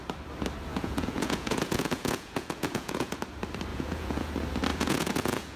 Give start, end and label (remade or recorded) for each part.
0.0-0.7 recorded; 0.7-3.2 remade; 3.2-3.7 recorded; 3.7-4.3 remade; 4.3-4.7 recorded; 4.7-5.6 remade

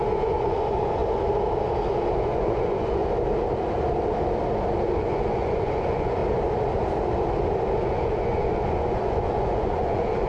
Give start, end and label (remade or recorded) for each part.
0.0-1.0 remade; 1.0-2.2 recorded; 2.2-3.0 remade; 3.0-5.0 recorded; 5.0-6.2 remade; 6.2-7.8 recorded; 7.8-10.3 remade

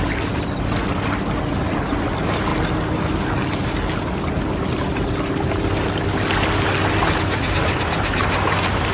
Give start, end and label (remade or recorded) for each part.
0.0-8.9 recorded

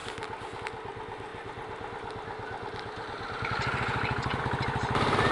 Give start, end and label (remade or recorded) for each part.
0.0-5.3 recorded

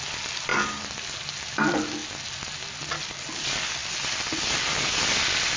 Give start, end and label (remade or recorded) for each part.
0.0-5.6 recorded

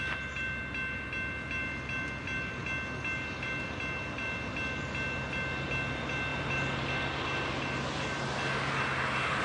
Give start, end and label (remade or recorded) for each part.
0.0-9.4 recorded